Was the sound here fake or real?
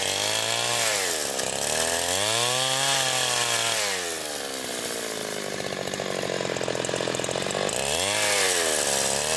real